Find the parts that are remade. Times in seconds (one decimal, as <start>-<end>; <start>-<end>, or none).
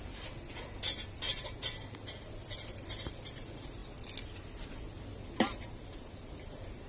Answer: none